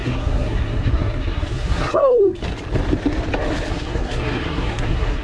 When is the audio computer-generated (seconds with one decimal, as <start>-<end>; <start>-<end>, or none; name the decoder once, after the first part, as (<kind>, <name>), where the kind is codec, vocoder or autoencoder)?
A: 0.0-2.4 (codec, SNAC); 3.7-5.2